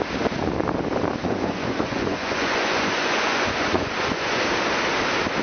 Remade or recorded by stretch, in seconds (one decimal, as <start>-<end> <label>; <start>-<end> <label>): 0.0-1.2 recorded; 1.2-4.4 remade; 4.4-5.4 recorded